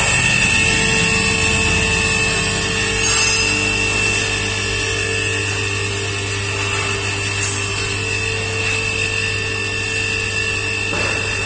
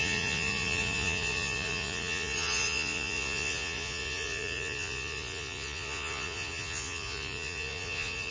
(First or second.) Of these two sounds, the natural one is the first